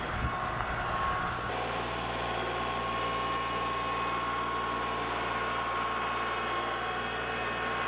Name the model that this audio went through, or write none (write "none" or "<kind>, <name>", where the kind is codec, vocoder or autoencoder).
none